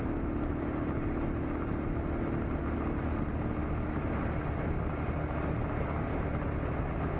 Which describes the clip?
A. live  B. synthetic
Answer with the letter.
A